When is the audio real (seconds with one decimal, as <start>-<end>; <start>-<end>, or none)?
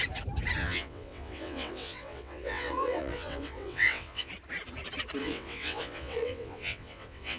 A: 0.0-0.6; 4.3-5.2